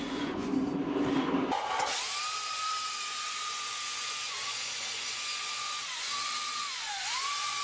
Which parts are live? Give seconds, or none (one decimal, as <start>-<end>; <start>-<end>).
0.5-2.3